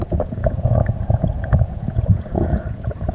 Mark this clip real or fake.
fake